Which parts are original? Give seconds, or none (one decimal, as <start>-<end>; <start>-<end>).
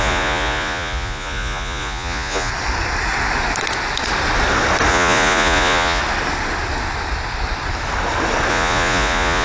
2.5-4.9; 6.0-8.5